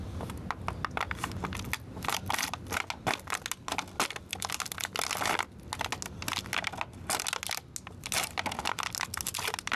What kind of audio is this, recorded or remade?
recorded